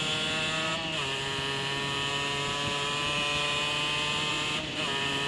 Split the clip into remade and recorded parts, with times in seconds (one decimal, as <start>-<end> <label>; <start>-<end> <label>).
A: 0.0-4.3 recorded; 4.3-5.3 remade